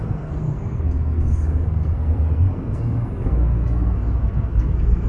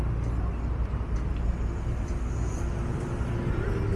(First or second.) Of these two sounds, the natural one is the second